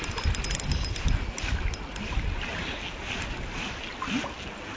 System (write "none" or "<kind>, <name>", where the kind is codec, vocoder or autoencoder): none